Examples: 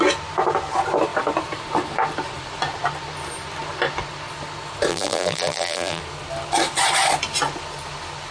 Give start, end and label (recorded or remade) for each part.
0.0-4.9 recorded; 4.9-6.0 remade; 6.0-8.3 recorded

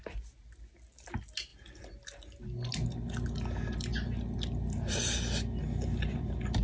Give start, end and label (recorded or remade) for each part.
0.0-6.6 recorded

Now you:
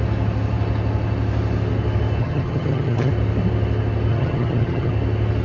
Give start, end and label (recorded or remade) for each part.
0.0-2.2 recorded; 2.2-3.1 remade; 3.1-4.1 recorded; 4.1-4.9 remade; 4.9-5.4 recorded

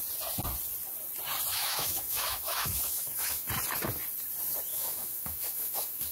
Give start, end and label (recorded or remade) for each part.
0.0-1.5 recorded; 1.5-3.5 remade; 3.5-4.7 recorded; 4.7-6.1 remade

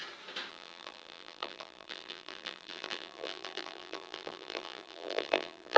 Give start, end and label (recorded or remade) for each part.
0.0-0.5 recorded; 0.5-5.8 remade

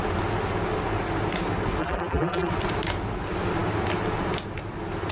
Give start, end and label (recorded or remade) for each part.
0.0-1.8 recorded; 1.8-2.5 remade; 2.5-5.1 recorded

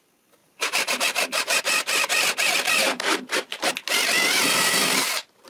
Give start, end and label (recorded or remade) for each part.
0.0-0.4 recorded; 0.4-3.7 remade; 3.7-5.5 recorded